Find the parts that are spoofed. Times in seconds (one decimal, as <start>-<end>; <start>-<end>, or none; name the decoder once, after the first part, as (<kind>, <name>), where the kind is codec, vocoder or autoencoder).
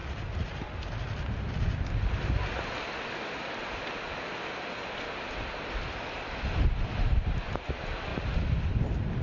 0.0-0.6 (vocoder, BigVGAN v2)